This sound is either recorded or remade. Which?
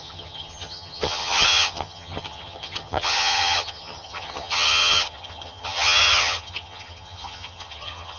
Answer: remade